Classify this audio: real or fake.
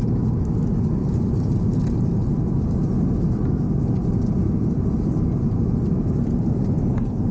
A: real